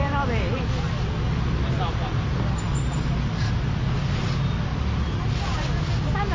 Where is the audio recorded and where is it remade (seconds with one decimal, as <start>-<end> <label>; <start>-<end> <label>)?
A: 0.0-6.3 recorded